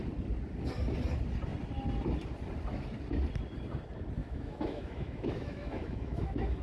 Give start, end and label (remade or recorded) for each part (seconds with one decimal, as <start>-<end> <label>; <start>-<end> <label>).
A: 0.0-4.2 recorded; 4.2-6.6 remade